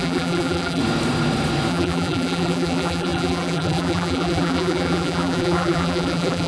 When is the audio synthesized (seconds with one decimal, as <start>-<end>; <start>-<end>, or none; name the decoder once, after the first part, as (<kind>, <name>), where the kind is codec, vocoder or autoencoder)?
0.0-0.8 (vocoder, BigVGAN v2); 1.7-6.5